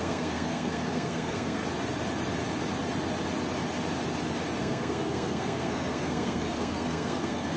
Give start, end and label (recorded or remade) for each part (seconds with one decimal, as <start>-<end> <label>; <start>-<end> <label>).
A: 0.0-1.6 remade; 1.6-4.6 recorded; 4.6-7.6 remade